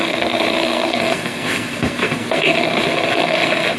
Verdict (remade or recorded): remade